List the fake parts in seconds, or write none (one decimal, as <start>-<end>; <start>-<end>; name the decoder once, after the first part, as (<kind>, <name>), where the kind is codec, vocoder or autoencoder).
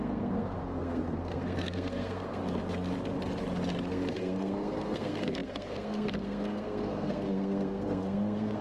0.0-2.4 (codec, SNAC); 3.9-8.6